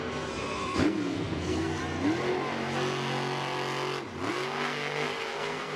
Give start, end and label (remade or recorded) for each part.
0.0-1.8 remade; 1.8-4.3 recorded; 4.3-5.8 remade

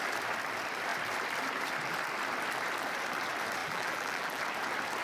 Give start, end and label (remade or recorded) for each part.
0.0-3.6 recorded; 3.6-4.4 remade; 4.4-5.0 recorded

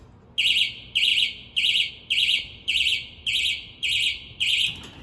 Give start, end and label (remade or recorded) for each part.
0.0-5.0 recorded

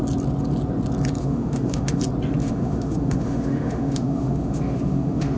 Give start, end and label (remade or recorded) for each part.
0.0-1.2 recorded; 1.2-2.0 remade; 2.0-2.4 recorded; 2.4-5.4 remade

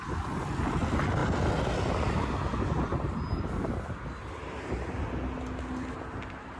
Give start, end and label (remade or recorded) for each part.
0.0-6.6 recorded